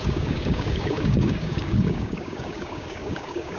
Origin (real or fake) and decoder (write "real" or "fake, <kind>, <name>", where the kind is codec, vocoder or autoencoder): fake, codec, DAC